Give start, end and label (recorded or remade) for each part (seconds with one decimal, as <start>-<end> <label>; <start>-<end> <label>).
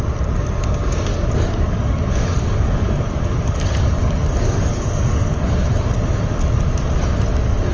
0.0-1.1 recorded; 1.1-5.7 remade; 5.7-7.7 recorded